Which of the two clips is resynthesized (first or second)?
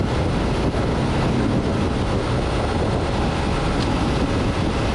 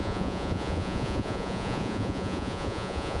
second